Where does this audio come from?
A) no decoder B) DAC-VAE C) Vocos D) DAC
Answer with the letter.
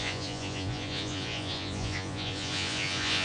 C